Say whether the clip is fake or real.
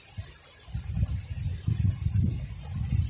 real